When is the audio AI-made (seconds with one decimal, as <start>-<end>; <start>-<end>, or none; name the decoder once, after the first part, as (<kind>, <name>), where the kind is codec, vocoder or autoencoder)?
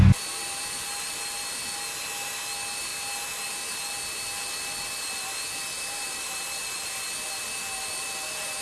none